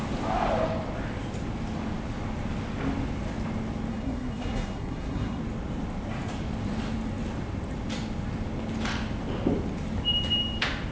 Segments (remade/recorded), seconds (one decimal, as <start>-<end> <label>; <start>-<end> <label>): 0.0-3.9 recorded; 3.9-5.4 remade; 5.4-10.9 recorded